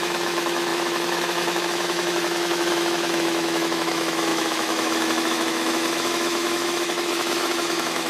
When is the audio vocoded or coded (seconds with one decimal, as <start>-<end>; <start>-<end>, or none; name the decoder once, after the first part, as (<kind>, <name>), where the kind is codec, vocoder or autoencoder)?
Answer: 0.0-8.1 (autoencoder, DAC-VAE)